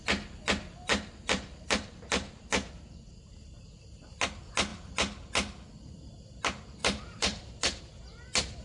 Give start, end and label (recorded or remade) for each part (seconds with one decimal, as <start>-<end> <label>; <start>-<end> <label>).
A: 0.0-0.9 recorded; 0.9-2.7 remade; 2.7-6.8 recorded; 6.8-7.8 remade; 7.8-8.6 recorded

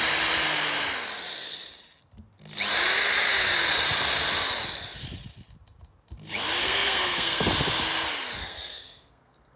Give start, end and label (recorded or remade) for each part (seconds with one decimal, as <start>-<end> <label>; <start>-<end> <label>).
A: 0.0-6.6 recorded; 6.6-7.5 remade; 7.5-8.4 recorded; 8.4-9.6 remade